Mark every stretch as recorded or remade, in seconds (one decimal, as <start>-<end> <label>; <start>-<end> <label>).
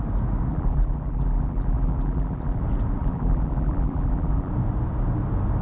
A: 0.0-0.5 recorded; 0.5-2.6 remade; 2.6-3.0 recorded; 3.0-4.5 remade; 4.5-5.6 recorded